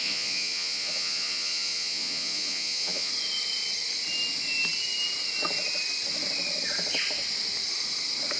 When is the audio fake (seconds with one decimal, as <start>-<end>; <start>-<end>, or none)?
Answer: 0.0-3.1